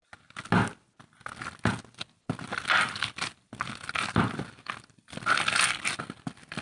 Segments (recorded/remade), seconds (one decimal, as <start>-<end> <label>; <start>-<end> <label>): 0.0-2.5 recorded; 2.5-6.0 remade; 6.0-6.6 recorded